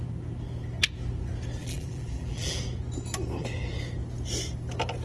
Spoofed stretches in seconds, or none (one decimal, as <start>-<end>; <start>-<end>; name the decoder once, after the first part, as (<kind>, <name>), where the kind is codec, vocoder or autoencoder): 1.6-2.6 (vocoder, BigVGAN v2)